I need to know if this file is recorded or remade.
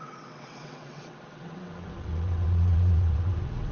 remade